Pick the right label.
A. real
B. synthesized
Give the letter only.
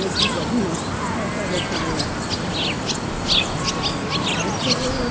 A